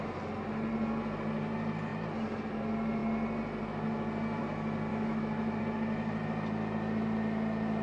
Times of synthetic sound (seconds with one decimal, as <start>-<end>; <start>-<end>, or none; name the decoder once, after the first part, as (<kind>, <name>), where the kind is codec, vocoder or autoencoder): 4.9-5.6 (autoencoder, DAC-VAE)